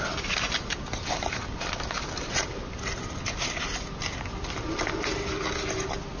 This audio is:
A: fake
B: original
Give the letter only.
B